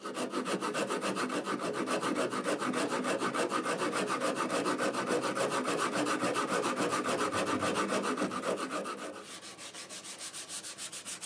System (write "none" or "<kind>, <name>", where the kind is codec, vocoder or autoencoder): none